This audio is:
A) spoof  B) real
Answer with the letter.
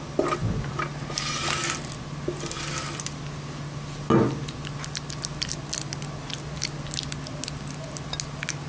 B